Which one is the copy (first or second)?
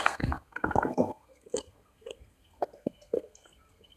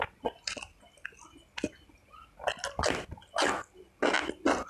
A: first